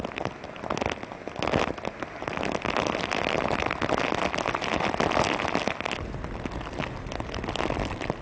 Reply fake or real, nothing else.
real